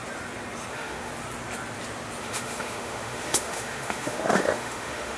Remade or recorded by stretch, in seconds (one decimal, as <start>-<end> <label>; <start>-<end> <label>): 0.0-0.7 recorded; 0.7-1.1 remade; 1.1-2.2 recorded; 2.2-5.2 remade